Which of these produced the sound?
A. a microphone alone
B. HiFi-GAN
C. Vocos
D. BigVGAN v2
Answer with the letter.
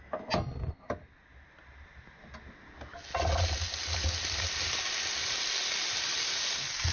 A